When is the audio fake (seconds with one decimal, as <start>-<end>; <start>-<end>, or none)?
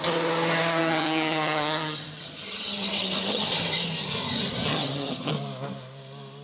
0.8-3.5; 4.7-5.3